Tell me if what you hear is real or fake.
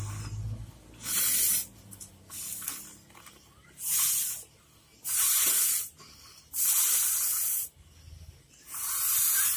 real